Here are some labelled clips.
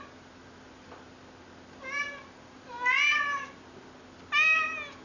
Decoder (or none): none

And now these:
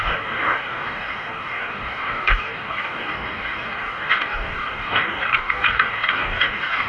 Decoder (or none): codec, DAC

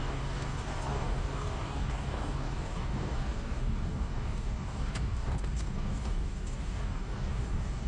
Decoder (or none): codec, DAC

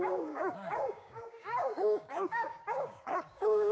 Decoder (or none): codec, DAC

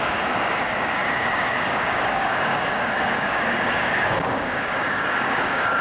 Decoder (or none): codec, DAC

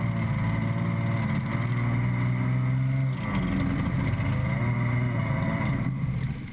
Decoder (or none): none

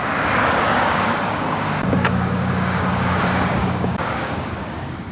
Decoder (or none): codec, DAC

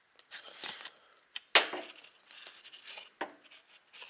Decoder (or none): none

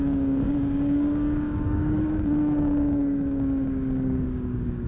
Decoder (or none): codec, DAC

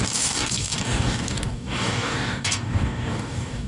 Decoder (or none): codec, DAC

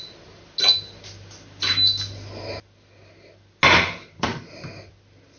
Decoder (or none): none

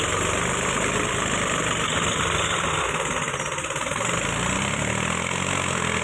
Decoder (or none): none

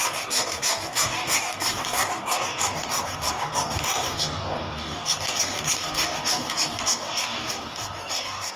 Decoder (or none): codec, DAC